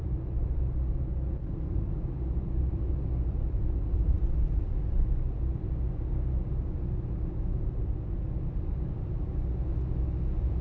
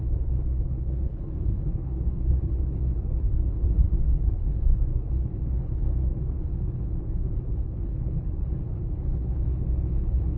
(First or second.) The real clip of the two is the first